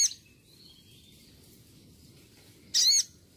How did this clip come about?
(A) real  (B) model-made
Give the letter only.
A